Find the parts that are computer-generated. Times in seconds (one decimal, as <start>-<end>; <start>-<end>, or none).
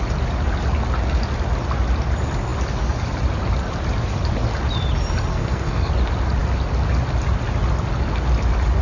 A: 5.3-5.9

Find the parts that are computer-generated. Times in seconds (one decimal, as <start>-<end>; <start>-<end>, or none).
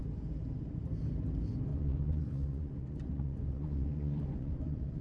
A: 1.7-5.0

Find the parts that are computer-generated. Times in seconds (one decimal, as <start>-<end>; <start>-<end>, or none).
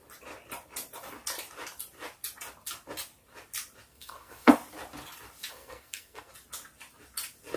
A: 3.9-4.5; 5.5-6.3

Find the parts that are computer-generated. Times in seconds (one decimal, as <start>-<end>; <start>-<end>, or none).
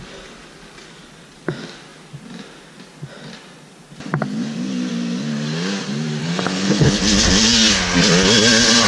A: 6.2-7.0